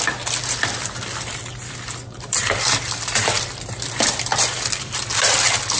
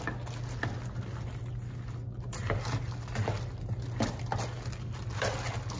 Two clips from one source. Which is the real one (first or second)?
second